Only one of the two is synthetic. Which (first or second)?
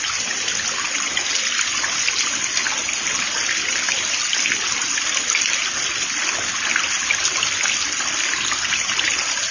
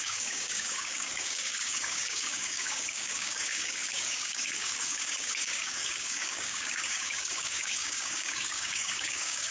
second